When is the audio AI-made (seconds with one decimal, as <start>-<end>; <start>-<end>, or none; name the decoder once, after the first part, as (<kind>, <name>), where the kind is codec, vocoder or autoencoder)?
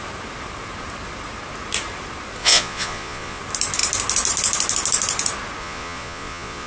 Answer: 2.4-3.4 (vocoder, Vocos); 5.6-6.7